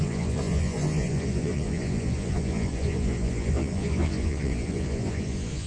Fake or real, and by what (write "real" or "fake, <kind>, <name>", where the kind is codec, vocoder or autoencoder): fake, vocoder, Vocos